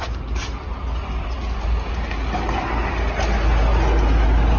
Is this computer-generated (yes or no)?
no